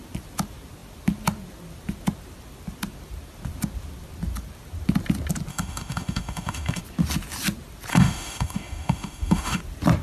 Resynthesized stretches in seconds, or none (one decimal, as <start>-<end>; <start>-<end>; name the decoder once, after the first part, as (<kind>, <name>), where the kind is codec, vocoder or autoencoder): 5.5-6.8 (autoencoder, DAC-VAE); 7.9-9.6